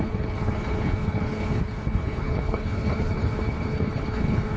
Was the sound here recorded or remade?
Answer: remade